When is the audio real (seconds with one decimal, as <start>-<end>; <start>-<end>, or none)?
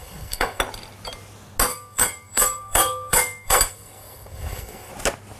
0.6-1.7; 4.9-5.4